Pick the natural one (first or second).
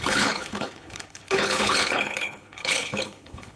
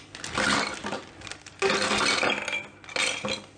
second